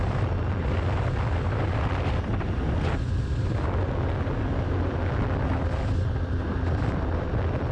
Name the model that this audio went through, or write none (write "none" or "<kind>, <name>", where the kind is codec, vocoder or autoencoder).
none